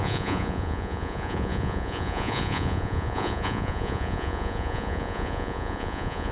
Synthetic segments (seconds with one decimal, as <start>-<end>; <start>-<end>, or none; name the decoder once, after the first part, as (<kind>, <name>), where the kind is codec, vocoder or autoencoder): 0.0-6.3 (vocoder, Vocos)